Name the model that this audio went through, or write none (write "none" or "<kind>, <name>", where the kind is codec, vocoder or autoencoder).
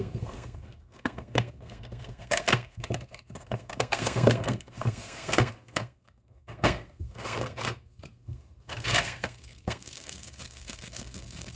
codec, SNAC